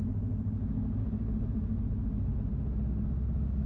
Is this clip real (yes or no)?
yes